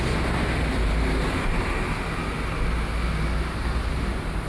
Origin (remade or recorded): recorded